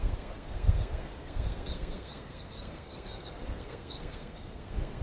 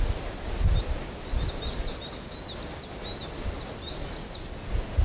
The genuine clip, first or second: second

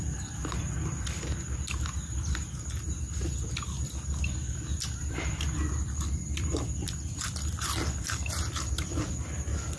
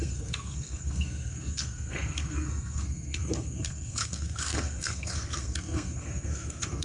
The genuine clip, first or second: first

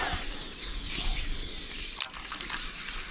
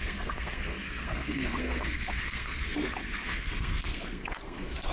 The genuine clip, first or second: first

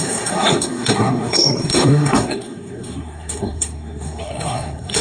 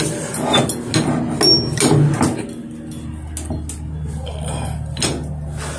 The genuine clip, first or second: second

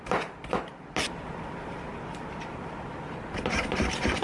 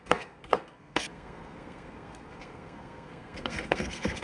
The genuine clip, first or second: first